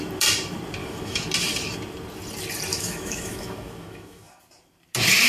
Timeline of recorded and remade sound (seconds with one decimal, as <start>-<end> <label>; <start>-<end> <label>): 0.0-0.8 recorded; 0.8-1.3 remade; 1.3-2.7 recorded; 2.7-4.4 remade; 4.4-5.3 recorded